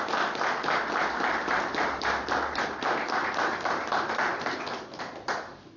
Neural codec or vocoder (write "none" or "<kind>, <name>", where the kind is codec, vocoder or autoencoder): none